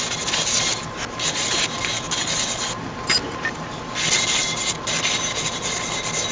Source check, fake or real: real